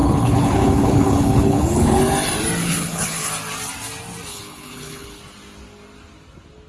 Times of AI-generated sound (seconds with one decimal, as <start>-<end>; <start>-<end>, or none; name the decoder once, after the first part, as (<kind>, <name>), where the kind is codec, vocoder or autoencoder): 0.0-2.0 (codec, HILCodec); 2.6-3.3; 4.3-5.2